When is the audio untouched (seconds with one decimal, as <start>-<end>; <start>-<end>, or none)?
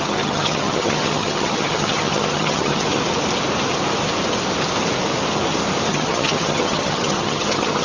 3.0-5.9